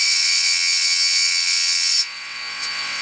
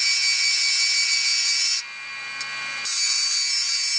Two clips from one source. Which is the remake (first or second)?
first